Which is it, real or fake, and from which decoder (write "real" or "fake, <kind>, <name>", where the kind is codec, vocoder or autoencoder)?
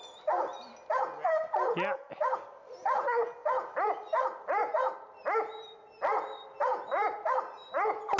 real